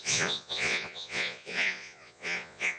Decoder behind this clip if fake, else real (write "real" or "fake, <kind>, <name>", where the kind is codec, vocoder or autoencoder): fake, vocoder, Vocos